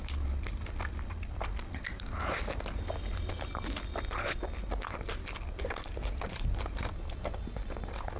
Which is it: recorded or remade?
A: recorded